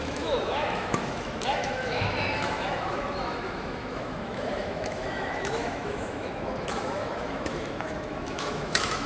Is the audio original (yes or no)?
no